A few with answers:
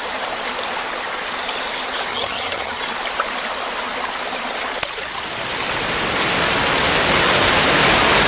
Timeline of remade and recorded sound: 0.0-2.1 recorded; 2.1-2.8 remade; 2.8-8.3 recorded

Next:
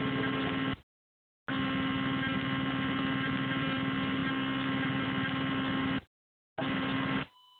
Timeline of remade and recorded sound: 0.0-7.6 recorded

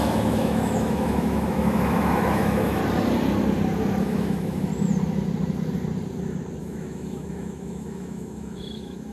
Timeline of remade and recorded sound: 0.0-2.8 remade; 2.8-4.0 recorded; 4.0-4.7 remade; 4.7-6.6 recorded; 6.6-9.1 remade

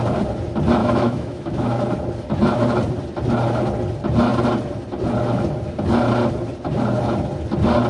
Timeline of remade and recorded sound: 0.0-0.8 recorded; 0.8-1.8 remade; 1.8-7.9 recorded

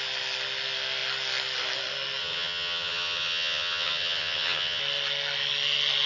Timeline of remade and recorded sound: 0.0-2.2 recorded; 2.2-4.8 remade; 4.8-6.1 recorded

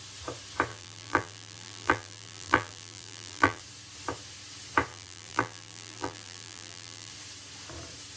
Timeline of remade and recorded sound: 0.0-0.7 recorded; 0.7-3.6 remade; 3.6-4.9 recorded; 4.9-7.1 remade; 7.1-8.2 recorded

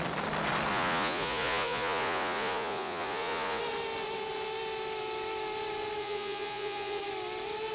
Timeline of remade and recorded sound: 0.0-0.7 recorded; 0.7-3.6 remade; 3.6-6.0 recorded; 6.0-7.0 remade; 7.0-7.7 recorded

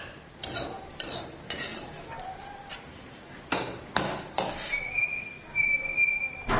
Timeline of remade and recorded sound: 0.0-6.6 recorded